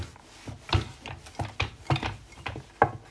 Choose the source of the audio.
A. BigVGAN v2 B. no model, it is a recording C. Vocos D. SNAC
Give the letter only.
B